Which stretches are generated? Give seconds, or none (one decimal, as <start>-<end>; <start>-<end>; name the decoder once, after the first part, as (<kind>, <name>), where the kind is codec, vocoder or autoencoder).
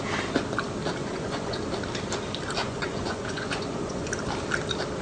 1.0-1.6 (vocoder, Vocos); 2.6-4.1